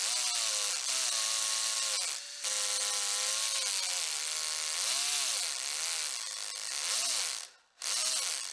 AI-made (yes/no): no